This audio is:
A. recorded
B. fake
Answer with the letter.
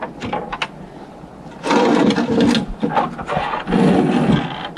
A